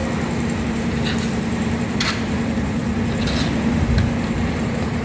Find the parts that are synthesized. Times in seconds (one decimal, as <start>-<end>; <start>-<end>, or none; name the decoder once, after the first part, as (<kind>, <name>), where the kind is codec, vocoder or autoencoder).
0.6-2.8 (vocoder, BigVGAN v2); 4.6-5.0